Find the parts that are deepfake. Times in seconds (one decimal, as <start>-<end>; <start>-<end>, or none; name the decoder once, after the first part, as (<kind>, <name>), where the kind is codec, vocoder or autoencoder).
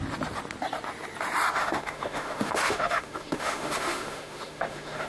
1.6-5.1 (autoencoder, DAC-VAE)